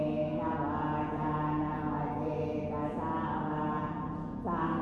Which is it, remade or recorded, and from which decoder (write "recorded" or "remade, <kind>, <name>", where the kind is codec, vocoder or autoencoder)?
recorded